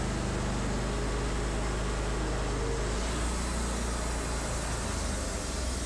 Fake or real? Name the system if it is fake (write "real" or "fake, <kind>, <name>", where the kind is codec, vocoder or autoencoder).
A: real